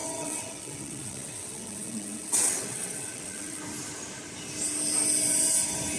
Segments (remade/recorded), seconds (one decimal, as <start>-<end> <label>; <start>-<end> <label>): 0.0-3.6 remade; 3.6-6.0 recorded